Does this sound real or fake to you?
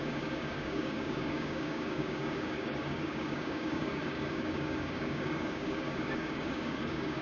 fake